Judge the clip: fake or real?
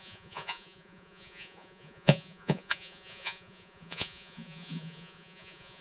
fake